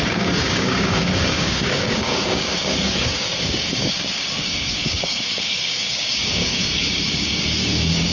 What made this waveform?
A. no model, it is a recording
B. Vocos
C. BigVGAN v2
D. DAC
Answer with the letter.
D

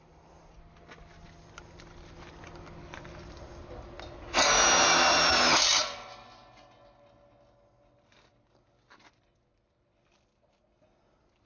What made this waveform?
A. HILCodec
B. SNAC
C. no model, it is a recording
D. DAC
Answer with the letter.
C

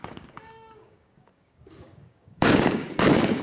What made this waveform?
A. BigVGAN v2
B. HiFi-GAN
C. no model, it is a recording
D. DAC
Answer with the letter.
D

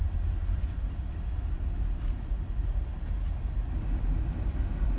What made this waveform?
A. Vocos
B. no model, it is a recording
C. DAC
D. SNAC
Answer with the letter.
B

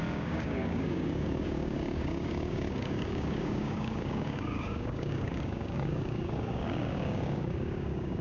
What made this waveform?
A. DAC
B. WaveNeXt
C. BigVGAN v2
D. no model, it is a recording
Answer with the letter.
A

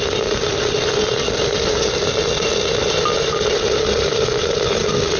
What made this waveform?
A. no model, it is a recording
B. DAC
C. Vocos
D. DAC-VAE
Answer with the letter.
A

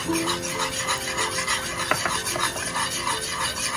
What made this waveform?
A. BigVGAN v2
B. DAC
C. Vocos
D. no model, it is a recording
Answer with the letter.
D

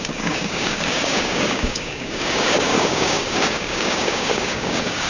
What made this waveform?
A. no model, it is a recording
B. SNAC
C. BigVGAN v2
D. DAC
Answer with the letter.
D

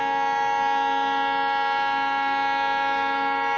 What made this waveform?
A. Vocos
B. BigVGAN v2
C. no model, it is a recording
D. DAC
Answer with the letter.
C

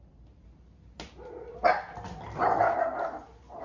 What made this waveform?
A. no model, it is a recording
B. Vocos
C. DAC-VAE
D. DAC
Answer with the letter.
A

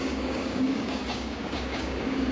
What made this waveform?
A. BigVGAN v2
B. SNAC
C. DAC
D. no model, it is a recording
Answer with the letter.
C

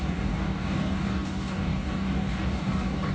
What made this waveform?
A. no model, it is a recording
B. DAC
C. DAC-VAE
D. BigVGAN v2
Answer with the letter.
B